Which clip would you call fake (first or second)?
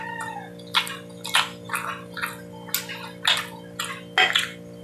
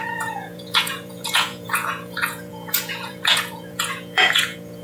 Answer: second